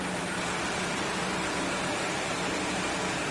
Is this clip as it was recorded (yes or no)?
no